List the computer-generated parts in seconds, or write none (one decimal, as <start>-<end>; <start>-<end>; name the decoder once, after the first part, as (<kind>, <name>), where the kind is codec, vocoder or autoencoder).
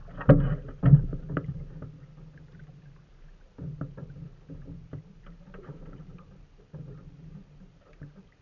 5.0-8.4 (vocoder, BigVGAN v2)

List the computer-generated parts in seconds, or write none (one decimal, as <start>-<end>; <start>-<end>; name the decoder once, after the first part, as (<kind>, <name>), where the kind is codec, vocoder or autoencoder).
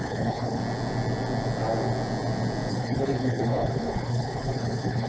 0.0-0.6 (codec, HILCodec); 2.7-5.1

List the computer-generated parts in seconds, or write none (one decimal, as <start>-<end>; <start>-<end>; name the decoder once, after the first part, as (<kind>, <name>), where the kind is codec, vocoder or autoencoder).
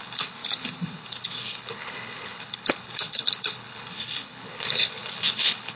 0.0-5.8 (codec, HILCodec)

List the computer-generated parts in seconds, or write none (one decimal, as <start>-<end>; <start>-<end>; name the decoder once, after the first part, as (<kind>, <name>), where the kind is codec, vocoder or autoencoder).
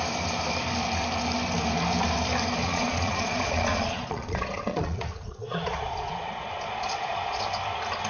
2.6-7.4 (vocoder, Vocos)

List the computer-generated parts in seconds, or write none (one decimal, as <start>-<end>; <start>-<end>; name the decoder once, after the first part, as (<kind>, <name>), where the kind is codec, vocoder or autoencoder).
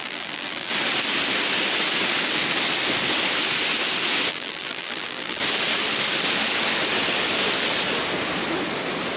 0.0-0.7 (vocoder, BigVGAN v2); 4.3-5.4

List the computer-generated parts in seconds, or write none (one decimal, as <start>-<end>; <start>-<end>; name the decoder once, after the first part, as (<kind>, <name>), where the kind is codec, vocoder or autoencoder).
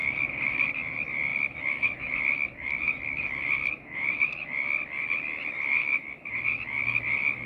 0.0-0.6 (autoencoder, DAC-VAE); 1.3-4.3; 5.8-6.4